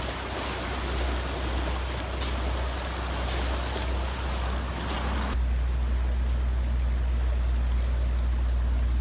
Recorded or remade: recorded